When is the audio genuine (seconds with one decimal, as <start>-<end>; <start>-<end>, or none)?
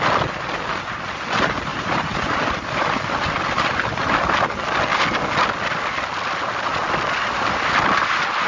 0.0-8.5